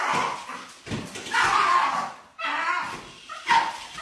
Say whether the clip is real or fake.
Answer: real